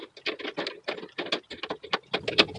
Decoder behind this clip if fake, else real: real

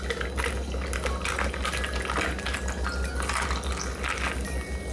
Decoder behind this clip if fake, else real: real